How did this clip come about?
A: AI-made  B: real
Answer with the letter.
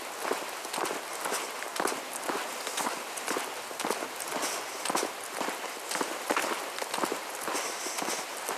B